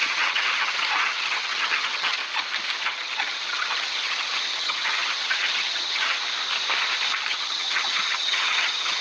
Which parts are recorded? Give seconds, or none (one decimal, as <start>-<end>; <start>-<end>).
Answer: 2.2-2.8; 6.2-7.3